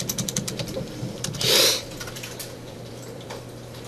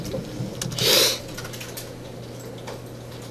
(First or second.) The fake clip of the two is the first